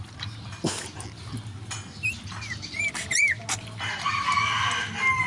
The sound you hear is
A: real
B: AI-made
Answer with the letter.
A